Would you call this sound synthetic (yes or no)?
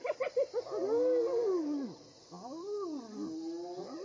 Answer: no